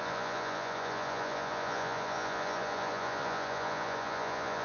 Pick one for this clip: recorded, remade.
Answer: remade